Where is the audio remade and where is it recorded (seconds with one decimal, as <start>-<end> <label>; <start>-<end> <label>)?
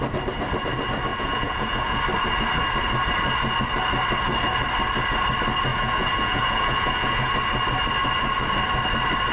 0.0-1.1 recorded; 1.1-2.0 remade; 2.0-5.7 recorded; 5.7-7.3 remade; 7.3-9.3 recorded